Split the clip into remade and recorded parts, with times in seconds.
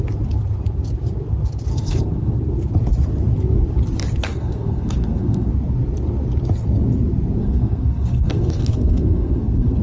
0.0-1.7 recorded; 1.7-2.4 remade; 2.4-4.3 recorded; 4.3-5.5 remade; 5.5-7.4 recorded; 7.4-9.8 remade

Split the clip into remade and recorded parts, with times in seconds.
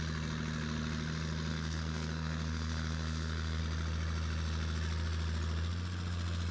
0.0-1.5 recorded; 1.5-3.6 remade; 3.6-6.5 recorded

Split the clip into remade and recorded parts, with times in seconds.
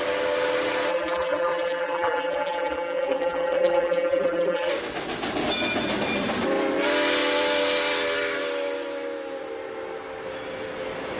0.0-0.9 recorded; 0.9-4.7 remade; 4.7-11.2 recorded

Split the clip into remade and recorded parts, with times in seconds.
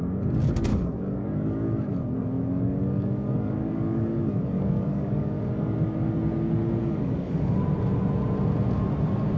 0.0-0.7 recorded; 0.7-5.5 remade; 5.5-6.8 recorded; 6.8-7.6 remade; 7.6-9.4 recorded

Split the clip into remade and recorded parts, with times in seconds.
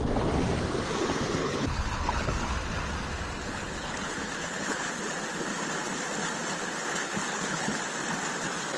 0.0-1.4 recorded; 1.4-2.5 remade; 2.5-3.5 recorded; 3.5-5.0 remade; 5.0-7.0 recorded; 7.0-7.8 remade; 7.8-8.8 recorded